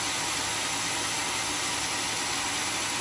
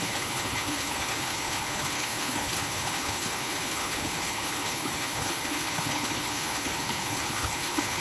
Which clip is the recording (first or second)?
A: first